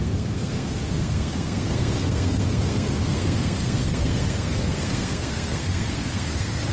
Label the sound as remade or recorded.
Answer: remade